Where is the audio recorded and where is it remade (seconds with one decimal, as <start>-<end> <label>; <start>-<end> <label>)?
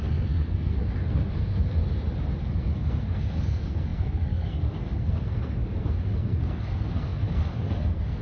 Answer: 0.0-1.8 remade; 1.8-2.4 recorded; 2.4-8.2 remade